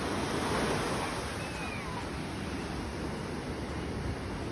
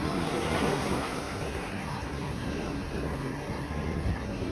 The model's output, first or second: second